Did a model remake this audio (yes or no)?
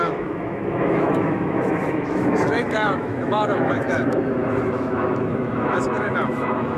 yes